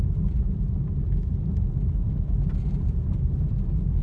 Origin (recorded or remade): recorded